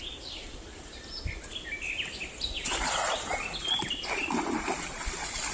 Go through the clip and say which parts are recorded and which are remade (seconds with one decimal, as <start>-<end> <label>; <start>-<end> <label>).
0.0-5.5 recorded